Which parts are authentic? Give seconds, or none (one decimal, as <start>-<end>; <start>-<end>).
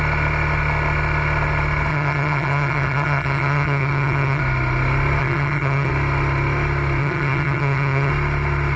0.0-1.9; 4.4-5.2; 5.9-7.0; 8.1-8.8